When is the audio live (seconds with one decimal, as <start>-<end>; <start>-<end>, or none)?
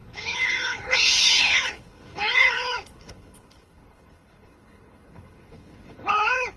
none